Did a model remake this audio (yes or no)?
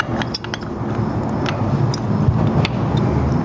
no